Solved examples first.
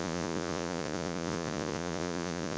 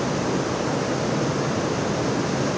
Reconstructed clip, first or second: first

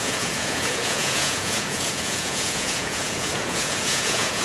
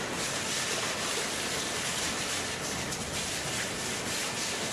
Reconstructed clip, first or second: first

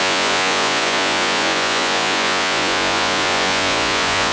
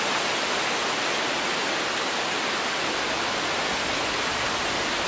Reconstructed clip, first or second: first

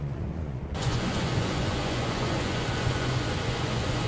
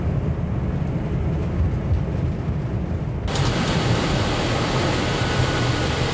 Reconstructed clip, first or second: first